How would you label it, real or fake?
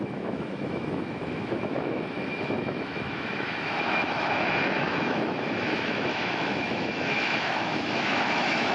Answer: fake